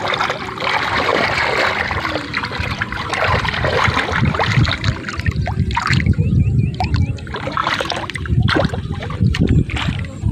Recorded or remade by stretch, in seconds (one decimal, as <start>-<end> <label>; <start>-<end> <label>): 0.0-2.3 recorded; 2.3-3.1 remade; 3.1-7.6 recorded; 7.6-9.7 remade; 9.7-10.3 recorded